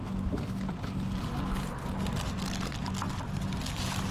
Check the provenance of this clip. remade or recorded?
recorded